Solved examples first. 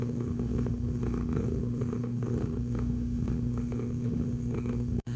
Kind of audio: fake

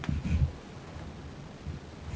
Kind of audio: real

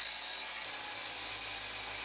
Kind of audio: real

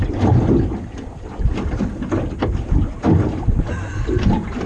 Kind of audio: real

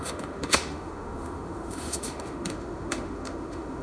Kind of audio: fake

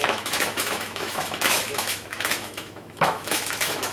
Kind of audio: fake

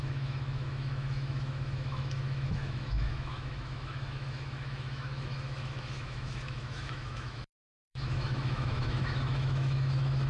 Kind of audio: fake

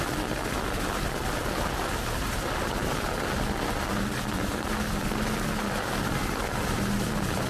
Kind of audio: real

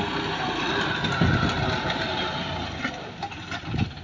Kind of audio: real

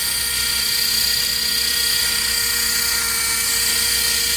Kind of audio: real